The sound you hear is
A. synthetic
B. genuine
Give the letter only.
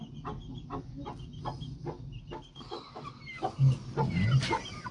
B